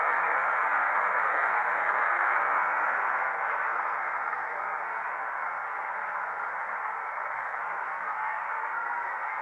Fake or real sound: fake